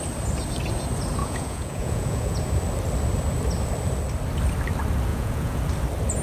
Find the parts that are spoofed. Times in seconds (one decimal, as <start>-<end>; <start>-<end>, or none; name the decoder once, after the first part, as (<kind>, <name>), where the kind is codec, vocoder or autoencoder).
1.2-2.4 (vocoder, Vocos); 5.1-5.6